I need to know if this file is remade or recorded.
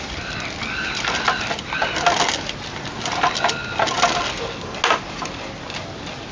recorded